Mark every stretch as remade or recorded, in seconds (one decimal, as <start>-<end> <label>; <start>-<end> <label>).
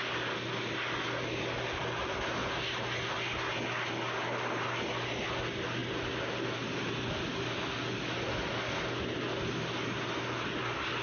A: 0.0-11.0 recorded